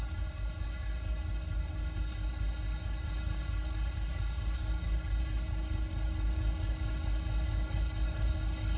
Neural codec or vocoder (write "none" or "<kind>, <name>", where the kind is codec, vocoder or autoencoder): codec, HILCodec